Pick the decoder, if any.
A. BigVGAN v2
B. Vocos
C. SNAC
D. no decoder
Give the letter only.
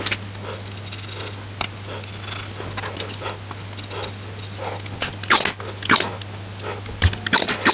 D